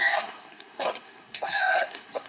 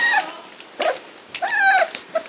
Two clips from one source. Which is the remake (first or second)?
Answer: first